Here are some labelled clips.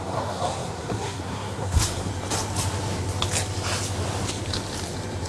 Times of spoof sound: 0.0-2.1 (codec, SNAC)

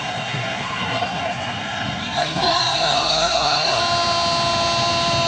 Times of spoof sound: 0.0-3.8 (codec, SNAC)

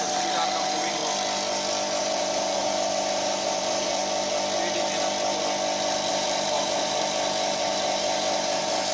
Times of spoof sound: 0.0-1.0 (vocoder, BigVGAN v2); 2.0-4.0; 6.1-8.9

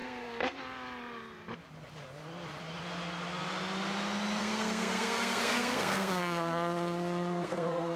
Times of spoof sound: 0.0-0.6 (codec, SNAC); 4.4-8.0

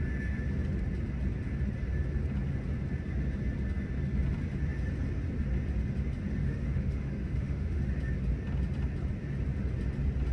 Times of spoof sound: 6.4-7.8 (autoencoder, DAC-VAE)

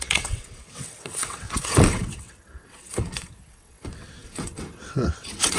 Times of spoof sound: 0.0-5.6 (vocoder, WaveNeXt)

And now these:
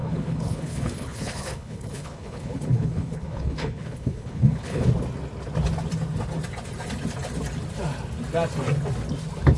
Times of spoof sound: 0.0-4.9 (codec, HILCodec)